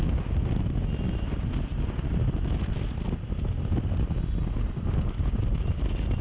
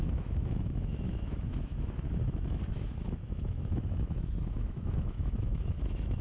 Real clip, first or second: first